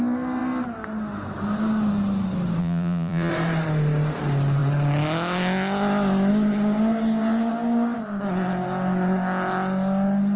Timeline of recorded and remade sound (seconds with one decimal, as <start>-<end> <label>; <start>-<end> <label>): 0.0-2.6 recorded; 2.6-3.3 remade; 3.3-10.4 recorded